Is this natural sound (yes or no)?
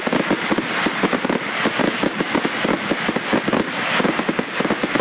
yes